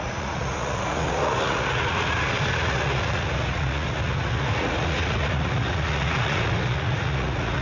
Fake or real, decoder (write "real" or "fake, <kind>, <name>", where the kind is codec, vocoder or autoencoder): fake, vocoder, Vocos